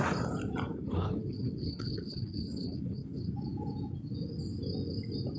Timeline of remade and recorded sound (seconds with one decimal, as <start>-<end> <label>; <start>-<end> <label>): 0.0-0.7 recorded; 0.7-3.2 remade; 3.2-5.4 recorded

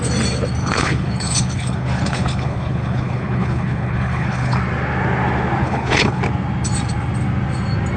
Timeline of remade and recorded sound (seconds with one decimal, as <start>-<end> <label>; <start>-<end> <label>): 0.0-0.6 recorded; 0.6-4.6 remade; 4.6-5.6 recorded; 5.6-6.2 remade; 6.2-8.0 recorded

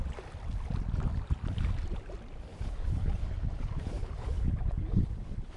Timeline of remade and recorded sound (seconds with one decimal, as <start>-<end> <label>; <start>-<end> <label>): 0.0-2.5 recorded; 2.5-5.6 remade

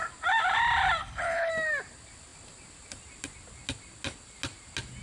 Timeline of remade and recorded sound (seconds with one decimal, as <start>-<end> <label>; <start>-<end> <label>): 0.0-1.0 recorded; 1.0-1.5 remade; 1.5-5.0 recorded

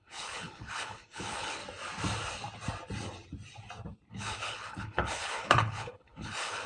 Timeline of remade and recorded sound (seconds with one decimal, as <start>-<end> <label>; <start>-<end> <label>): 0.0-1.6 remade; 1.6-4.1 recorded; 4.1-6.7 remade

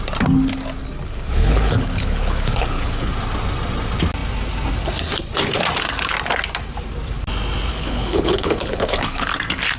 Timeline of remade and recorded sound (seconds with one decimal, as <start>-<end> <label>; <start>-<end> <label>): 0.0-0.8 recorded; 0.8-3.1 remade; 3.1-7.7 recorded; 7.7-9.3 remade; 9.3-9.8 recorded